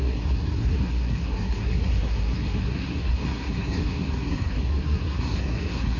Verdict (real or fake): fake